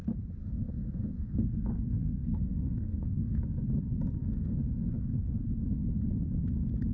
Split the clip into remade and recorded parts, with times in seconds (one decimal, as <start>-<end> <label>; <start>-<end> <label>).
0.0-0.4 recorded; 0.4-3.6 remade; 3.6-4.2 recorded; 4.2-5.4 remade; 5.4-6.9 recorded